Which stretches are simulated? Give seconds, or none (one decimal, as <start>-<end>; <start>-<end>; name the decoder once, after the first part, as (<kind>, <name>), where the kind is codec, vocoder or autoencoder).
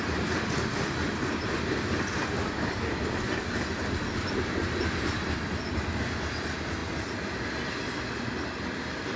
none